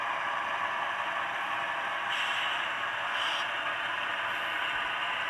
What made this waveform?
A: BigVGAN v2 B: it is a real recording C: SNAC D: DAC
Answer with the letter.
B